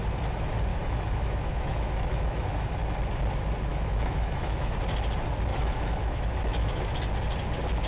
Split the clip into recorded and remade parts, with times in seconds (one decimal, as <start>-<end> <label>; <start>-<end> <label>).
0.0-0.7 recorded; 0.7-2.7 remade; 2.7-3.7 recorded; 3.7-4.8 remade; 4.8-5.5 recorded; 5.5-6.9 remade; 6.9-7.9 recorded

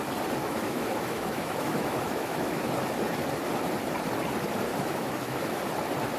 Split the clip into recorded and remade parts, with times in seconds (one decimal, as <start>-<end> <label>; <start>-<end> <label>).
0.0-0.4 recorded; 0.4-2.7 remade; 2.7-4.7 recorded; 4.7-5.6 remade; 5.6-6.2 recorded

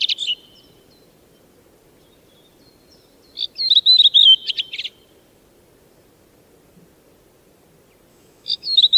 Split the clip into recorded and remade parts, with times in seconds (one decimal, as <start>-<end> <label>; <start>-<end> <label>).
0.0-8.1 recorded; 8.1-9.0 remade

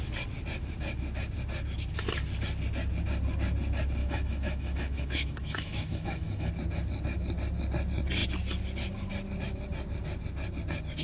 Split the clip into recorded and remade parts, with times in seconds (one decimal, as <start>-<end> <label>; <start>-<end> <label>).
0.0-4.0 recorded; 4.0-6.5 remade; 6.5-11.0 recorded

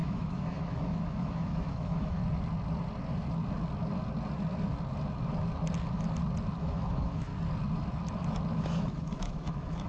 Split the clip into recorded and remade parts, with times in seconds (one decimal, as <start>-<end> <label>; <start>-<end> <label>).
0.0-2.2 remade; 2.2-6.6 recorded; 6.6-7.3 remade; 7.3-8.6 recorded; 8.6-9.9 remade

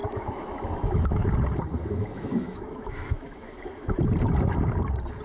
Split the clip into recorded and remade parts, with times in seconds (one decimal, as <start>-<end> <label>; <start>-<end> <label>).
0.0-1.3 remade; 1.3-1.8 recorded; 1.8-4.0 remade; 4.0-5.2 recorded

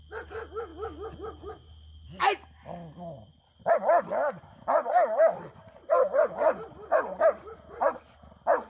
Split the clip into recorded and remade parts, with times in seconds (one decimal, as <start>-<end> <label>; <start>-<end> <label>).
0.0-8.7 recorded

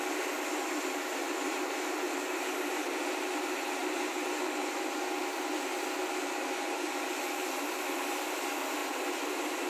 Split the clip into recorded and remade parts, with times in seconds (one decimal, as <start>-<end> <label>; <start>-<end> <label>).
0.0-9.7 recorded